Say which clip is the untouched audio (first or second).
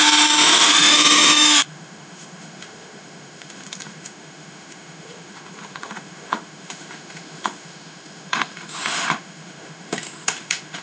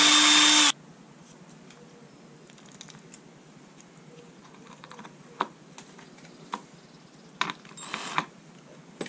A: second